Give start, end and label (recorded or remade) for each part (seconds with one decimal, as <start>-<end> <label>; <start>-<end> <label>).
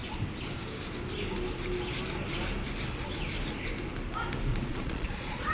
0.0-4.5 recorded; 4.5-5.5 remade